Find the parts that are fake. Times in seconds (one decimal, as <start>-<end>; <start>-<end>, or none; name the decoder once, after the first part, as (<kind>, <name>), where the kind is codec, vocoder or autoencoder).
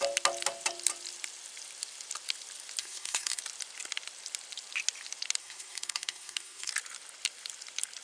2.8-3.4 (codec, SNAC); 5.4-6.7